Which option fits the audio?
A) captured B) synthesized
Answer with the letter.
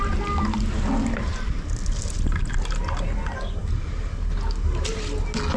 A